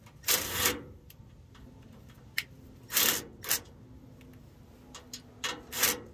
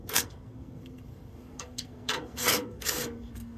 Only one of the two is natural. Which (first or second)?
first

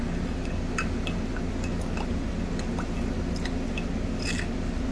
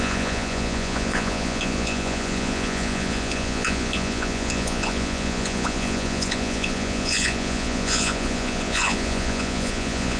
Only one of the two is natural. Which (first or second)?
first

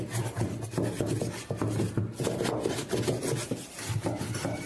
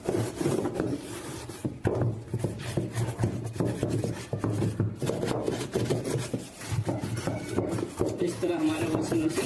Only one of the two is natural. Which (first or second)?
first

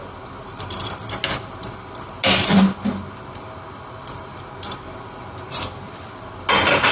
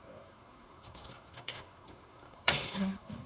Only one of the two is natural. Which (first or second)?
first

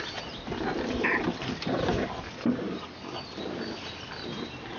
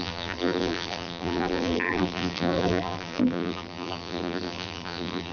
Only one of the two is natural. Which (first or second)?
first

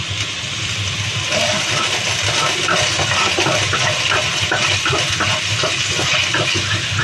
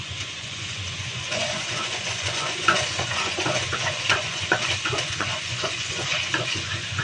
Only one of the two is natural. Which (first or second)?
first